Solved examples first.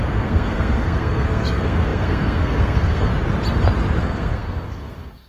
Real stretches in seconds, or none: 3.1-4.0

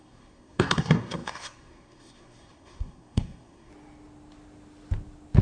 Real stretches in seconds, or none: 3.7-5.4

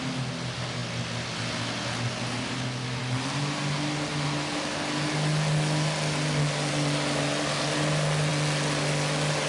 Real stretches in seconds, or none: 0.0-9.5